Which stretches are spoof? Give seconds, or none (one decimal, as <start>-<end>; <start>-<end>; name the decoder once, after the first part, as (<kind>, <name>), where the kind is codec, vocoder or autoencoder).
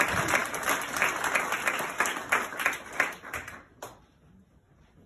none